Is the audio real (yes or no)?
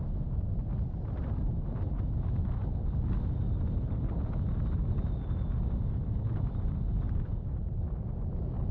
yes